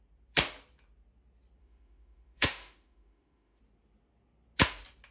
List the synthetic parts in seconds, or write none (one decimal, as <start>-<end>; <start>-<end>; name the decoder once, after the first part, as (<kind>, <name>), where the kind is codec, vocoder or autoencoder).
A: 1.6-3.6 (autoencoder, DAC-VAE)